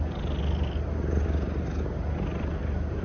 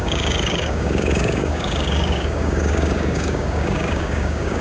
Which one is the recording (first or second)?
first